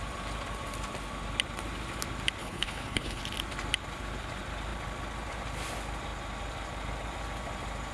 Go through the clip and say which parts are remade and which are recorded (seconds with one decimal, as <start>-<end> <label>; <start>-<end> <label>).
0.0-2.4 recorded; 2.4-3.2 remade; 3.2-7.9 recorded